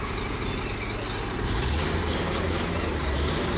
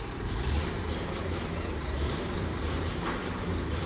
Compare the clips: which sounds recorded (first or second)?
first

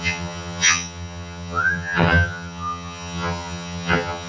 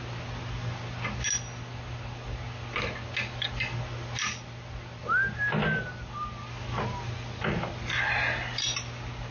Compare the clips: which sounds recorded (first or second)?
second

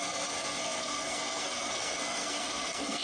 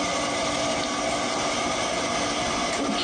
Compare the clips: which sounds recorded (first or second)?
second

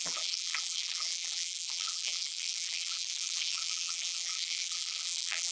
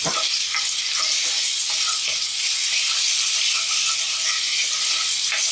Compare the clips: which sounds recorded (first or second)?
second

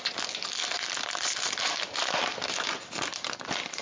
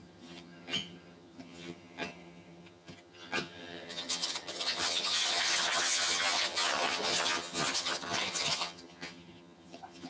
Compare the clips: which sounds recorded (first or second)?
first